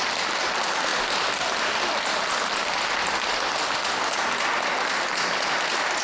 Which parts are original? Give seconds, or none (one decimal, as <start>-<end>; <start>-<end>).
0.0-6.0